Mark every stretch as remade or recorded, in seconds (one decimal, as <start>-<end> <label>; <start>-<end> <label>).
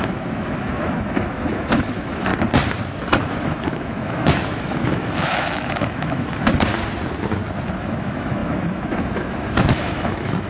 0.0-2.3 remade; 2.3-3.2 recorded; 3.2-6.7 remade; 6.7-7.8 recorded; 7.8-10.5 remade